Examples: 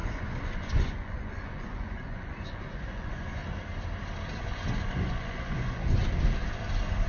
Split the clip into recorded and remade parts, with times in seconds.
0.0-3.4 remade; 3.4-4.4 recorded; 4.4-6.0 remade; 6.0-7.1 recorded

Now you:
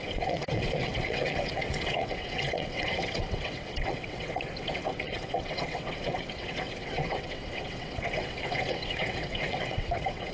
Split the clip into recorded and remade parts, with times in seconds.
0.0-10.3 remade

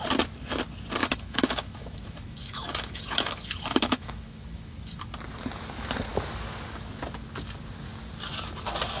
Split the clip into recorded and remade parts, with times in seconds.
0.0-1.0 recorded; 1.0-5.0 remade; 5.0-9.0 recorded

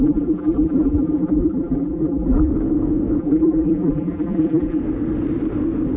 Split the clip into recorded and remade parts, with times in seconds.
0.0-2.5 remade; 2.5-3.2 recorded; 3.2-4.8 remade; 4.8-6.0 recorded